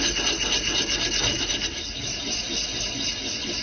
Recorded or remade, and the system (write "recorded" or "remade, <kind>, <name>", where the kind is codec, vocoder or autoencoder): recorded